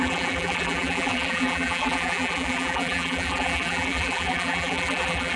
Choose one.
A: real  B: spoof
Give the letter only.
B